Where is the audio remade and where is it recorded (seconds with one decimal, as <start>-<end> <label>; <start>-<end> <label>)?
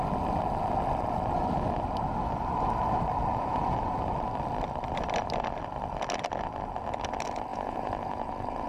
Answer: 0.0-3.3 recorded; 3.3-3.9 remade; 3.9-7.5 recorded; 7.5-8.7 remade